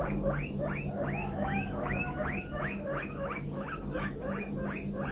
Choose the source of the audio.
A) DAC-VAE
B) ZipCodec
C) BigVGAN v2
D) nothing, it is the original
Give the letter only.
A